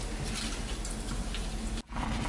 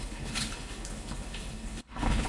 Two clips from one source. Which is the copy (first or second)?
second